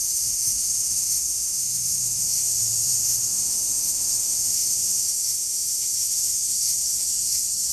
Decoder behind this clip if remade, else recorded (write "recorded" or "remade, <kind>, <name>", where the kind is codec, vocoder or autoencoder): remade, autoencoder, DAC-VAE